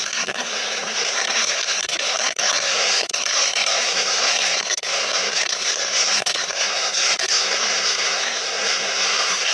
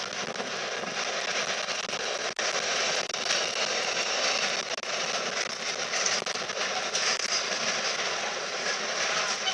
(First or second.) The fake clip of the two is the first